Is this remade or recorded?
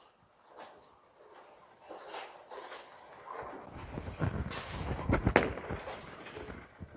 recorded